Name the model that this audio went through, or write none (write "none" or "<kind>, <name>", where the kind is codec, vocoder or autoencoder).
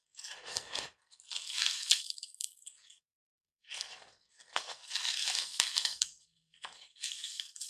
codec, SNAC